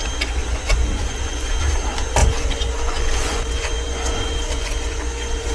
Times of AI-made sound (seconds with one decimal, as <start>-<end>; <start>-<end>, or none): 0.4-1.5; 2.2-5.5